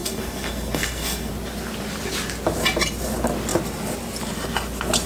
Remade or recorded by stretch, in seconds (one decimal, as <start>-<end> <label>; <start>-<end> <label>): 0.0-1.3 remade; 1.3-5.1 recorded